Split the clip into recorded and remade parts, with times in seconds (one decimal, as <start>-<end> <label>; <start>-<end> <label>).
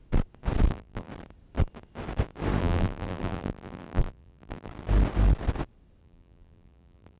0.0-0.7 recorded; 0.7-1.1 remade; 1.1-2.6 recorded; 2.6-4.7 remade; 4.7-6.0 recorded; 6.0-7.2 remade